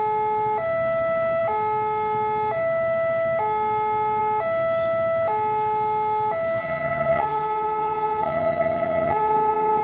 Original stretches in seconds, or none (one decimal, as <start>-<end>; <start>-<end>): 0.0-6.6